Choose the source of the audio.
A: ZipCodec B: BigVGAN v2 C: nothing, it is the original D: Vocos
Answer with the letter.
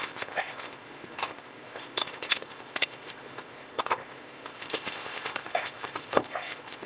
A